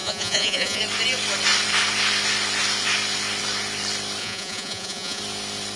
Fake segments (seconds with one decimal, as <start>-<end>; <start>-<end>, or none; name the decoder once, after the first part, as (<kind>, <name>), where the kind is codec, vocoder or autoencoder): 0.0-0.8 (vocoder, Vocos); 4.2-5.2